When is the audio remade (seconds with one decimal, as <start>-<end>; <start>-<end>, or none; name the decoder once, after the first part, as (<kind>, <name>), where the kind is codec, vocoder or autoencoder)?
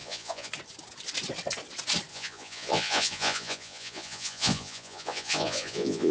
0.0-0.5 (vocoder, Vocos); 2.1-6.1